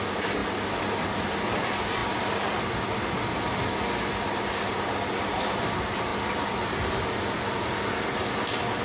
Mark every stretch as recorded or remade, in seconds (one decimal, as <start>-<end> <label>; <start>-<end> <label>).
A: 0.0-8.8 recorded